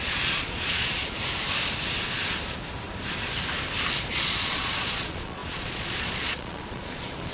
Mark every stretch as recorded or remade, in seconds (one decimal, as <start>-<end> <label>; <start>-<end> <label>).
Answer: 0.0-1.0 remade; 1.0-4.1 recorded; 4.1-7.3 remade